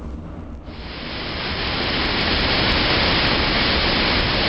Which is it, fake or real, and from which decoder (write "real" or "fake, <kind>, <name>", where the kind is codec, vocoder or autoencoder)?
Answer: real